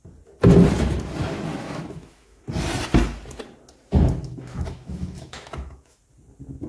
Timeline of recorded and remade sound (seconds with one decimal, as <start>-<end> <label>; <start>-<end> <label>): 0.0-1.5 recorded; 1.5-2.4 remade; 2.4-4.2 recorded; 4.2-6.0 remade; 6.0-6.7 recorded